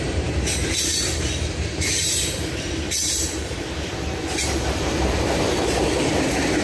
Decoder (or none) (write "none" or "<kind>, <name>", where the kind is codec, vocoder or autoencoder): vocoder, BigVGAN v2